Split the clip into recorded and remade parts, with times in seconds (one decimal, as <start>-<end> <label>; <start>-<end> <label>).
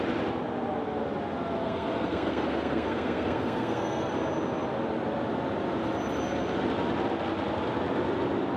0.0-1.6 recorded; 1.6-4.1 remade; 4.1-8.6 recorded